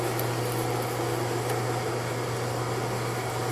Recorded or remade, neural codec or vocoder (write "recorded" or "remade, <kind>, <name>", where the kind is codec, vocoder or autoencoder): recorded